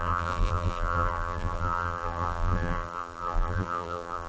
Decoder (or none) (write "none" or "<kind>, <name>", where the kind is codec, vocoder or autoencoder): vocoder, BigVGAN v2